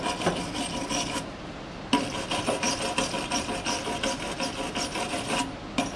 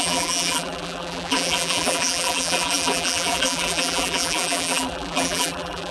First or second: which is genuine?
first